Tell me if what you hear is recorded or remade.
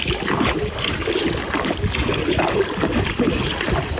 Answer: recorded